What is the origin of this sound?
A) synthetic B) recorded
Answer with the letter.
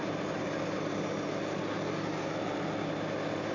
B